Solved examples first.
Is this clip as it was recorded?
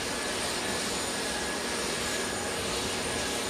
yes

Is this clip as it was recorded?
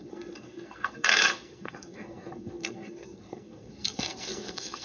no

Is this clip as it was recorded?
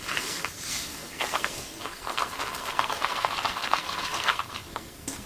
no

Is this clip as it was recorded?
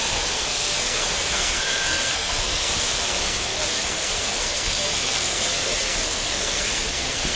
no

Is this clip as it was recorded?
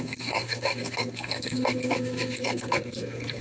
no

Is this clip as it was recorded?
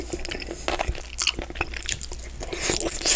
yes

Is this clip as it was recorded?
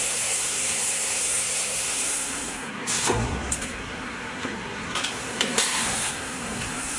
no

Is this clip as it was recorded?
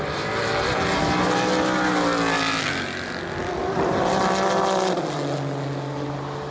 yes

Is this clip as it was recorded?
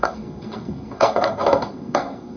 no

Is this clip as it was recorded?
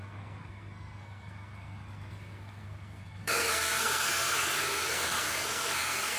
no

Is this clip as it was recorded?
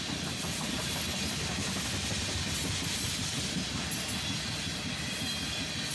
yes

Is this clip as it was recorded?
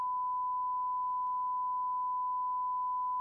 yes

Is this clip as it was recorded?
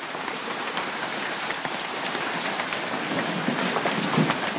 yes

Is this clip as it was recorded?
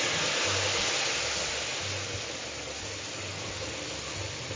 yes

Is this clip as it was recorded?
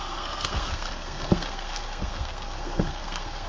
no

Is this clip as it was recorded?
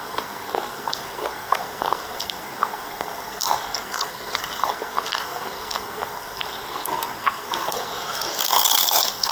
no